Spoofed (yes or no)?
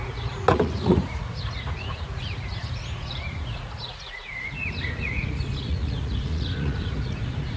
yes